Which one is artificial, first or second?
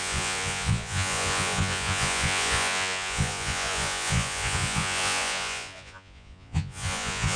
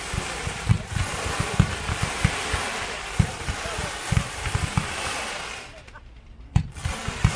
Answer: first